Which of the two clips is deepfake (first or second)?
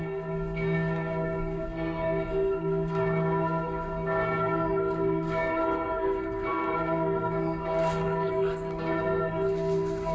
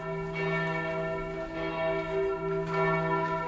first